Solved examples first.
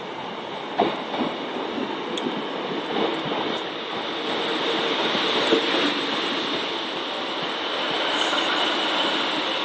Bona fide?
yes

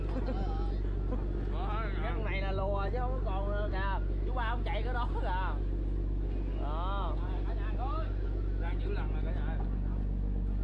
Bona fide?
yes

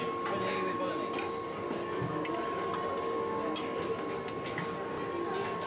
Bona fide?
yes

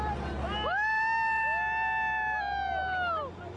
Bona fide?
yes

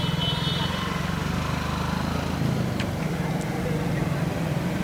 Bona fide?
yes